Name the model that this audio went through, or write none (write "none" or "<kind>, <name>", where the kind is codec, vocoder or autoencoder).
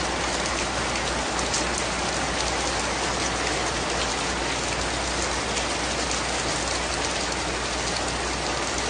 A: none